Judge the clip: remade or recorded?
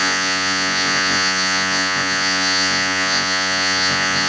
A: remade